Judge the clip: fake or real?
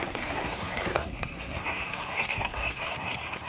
fake